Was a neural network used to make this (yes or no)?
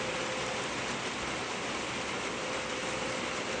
no